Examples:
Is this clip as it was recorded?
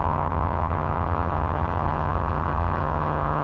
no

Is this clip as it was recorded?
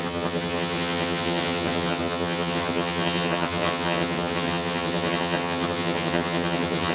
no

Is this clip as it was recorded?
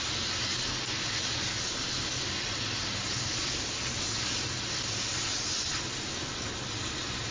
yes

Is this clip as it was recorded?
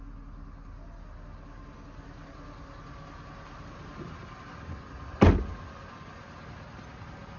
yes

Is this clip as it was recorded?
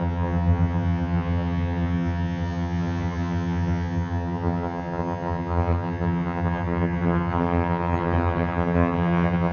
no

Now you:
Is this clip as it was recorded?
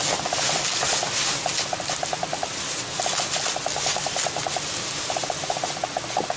yes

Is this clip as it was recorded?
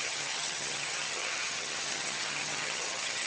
no